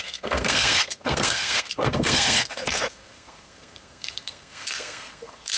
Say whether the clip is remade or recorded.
remade